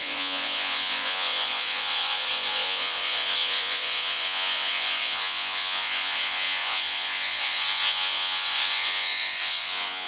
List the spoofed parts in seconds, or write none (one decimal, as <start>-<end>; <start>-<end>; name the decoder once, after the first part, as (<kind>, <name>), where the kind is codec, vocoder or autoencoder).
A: 0.0-10.1 (vocoder, Vocos)

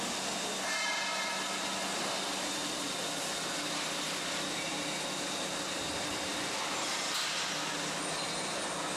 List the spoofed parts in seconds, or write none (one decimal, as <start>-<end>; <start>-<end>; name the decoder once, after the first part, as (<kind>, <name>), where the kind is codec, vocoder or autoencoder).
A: none

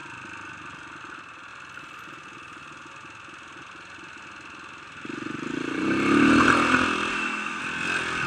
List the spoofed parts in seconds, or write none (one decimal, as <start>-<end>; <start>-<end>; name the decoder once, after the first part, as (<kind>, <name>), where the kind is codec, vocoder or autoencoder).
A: 7.1-7.6 (codec, SNAC)

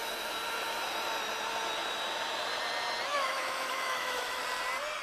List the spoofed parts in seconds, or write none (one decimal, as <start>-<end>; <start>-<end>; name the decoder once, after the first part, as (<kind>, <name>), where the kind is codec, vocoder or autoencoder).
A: 3.1-4.4 (autoencoder, DAC-VAE)